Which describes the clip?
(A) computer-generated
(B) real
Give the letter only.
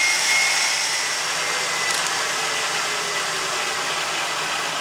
B